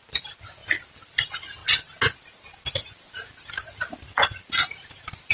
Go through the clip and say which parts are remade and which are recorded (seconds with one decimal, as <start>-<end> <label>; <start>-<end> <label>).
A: 0.0-0.6 remade; 0.6-1.2 recorded; 1.2-1.6 remade; 1.6-4.5 recorded; 4.5-5.3 remade